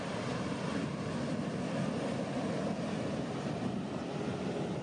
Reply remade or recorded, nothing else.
recorded